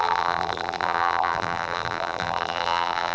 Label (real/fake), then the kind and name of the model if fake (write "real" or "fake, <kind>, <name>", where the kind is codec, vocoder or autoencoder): fake, vocoder, BigVGAN v2